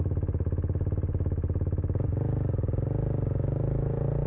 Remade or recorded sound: recorded